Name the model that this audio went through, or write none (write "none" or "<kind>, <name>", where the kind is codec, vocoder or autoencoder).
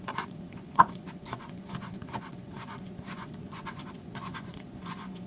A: vocoder, Vocos